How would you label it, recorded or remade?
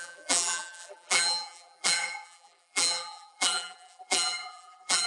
remade